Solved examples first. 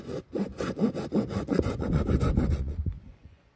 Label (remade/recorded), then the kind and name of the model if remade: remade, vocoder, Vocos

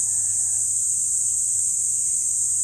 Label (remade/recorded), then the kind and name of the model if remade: recorded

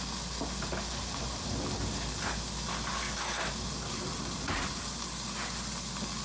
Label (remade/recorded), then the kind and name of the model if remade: recorded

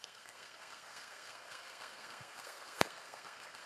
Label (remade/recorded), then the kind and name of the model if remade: remade, codec, SNAC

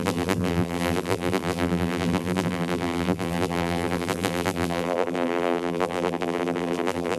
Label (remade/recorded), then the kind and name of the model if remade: remade, vocoder, BigVGAN v2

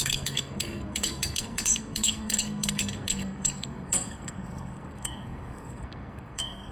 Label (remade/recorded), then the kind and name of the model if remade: remade, codec, SNAC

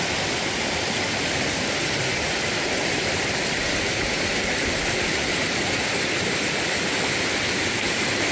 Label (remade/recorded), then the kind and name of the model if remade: recorded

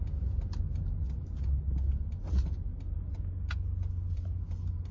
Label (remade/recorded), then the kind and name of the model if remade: recorded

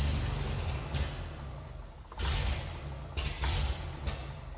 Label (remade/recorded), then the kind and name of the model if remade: recorded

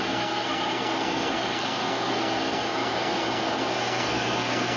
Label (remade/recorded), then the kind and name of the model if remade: remade, codec, SNAC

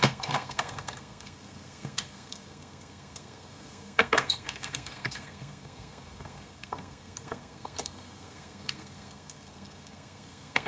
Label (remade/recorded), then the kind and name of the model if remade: remade, codec, SNAC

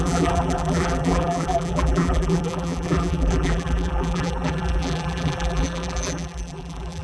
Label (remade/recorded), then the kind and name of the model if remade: remade, vocoder, BigVGAN v2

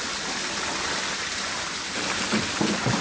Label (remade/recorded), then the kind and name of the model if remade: recorded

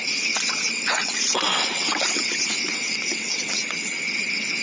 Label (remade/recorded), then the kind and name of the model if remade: remade, vocoder, WaveNeXt